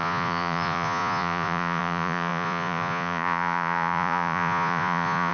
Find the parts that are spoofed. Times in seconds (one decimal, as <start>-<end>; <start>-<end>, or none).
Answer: 0.0-5.3